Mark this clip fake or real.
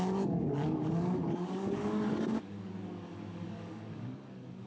fake